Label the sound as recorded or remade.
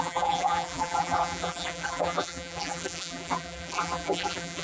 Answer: remade